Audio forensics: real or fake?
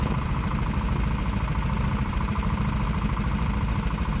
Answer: real